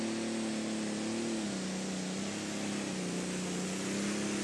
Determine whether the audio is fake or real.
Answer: real